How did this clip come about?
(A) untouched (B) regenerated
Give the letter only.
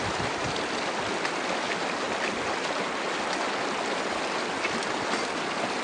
A